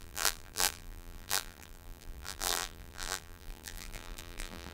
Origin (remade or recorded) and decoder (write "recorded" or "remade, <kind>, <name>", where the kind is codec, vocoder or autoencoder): remade, vocoder, BigVGAN v2